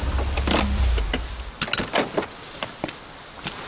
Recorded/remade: recorded